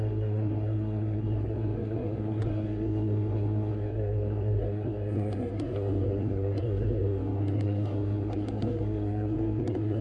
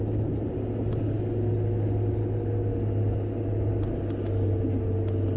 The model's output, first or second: first